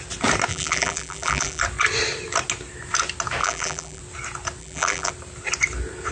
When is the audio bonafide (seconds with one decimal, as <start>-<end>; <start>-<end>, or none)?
0.0-0.5; 1.6-3.4; 4.0-4.6; 5.1-6.1